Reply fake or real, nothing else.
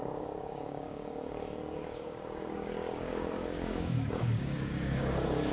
fake